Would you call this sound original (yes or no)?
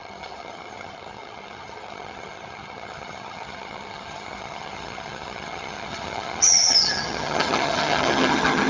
no